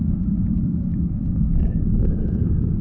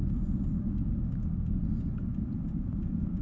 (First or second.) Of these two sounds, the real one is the second